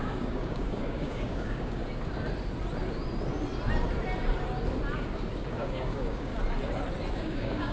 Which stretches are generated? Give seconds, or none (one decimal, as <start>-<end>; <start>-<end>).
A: 0.0-1.8; 5.5-6.3; 7.1-7.7